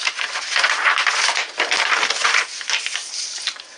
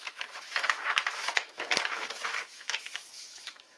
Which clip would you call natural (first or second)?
first